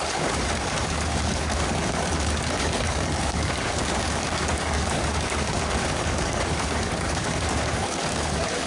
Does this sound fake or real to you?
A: fake